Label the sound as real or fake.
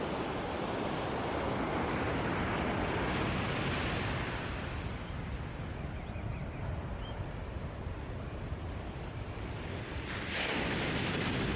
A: real